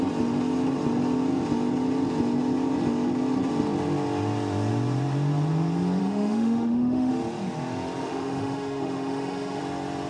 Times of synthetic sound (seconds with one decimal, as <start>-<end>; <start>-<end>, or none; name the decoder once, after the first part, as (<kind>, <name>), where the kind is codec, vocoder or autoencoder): 6.0-7.1 (autoencoder, DAC-VAE); 8.0-9.6

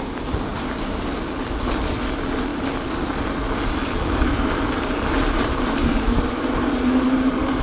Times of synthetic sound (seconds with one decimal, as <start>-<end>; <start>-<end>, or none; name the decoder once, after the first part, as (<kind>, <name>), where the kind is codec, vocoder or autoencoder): 0.5-1.1 (vocoder, BigVGAN v2); 2.5-6.3